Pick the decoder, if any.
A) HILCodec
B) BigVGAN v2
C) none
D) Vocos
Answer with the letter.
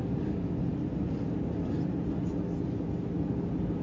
C